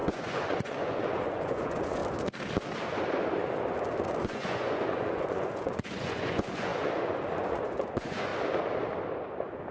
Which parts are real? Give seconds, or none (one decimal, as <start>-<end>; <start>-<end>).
2.0-4.2; 8.3-9.7